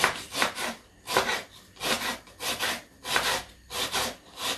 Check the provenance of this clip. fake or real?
real